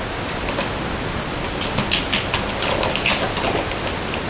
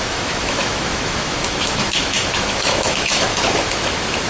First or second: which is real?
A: first